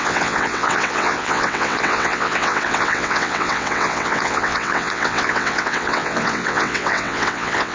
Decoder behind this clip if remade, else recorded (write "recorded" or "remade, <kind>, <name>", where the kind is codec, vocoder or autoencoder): remade, vocoder, WaveNeXt